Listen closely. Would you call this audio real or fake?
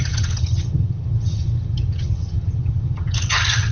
fake